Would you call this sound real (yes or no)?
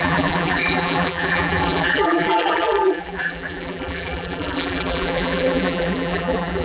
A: no